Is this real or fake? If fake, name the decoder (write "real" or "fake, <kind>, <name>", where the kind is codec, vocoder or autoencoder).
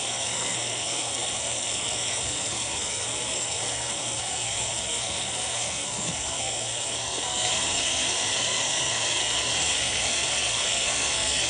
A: fake, codec, SNAC